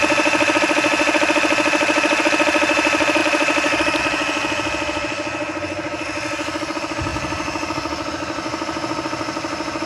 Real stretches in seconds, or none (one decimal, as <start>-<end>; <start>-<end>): 0.0-3.2; 4.0-9.9